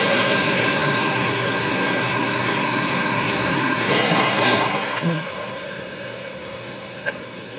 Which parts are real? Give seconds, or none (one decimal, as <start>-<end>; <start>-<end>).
none